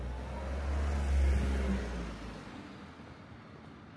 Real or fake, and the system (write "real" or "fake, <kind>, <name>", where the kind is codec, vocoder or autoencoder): real